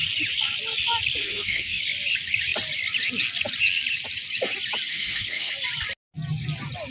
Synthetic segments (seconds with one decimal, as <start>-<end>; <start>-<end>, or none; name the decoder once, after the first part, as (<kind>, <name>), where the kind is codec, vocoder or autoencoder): 1.2-1.8 (autoencoder, DAC-VAE); 4.9-5.5